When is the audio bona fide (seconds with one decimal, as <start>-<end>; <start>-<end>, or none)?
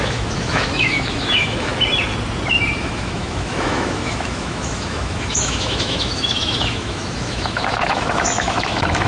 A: 1.7-2.8